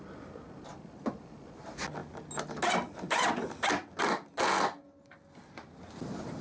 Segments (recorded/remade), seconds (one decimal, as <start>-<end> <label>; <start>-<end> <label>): 0.0-6.4 recorded